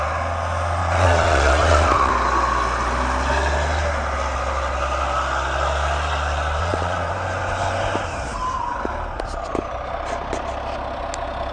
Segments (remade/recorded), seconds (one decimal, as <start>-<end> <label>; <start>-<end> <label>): 0.0-0.8 recorded; 0.8-2.1 remade; 2.1-6.6 recorded; 6.6-7.1 remade; 7.1-11.5 recorded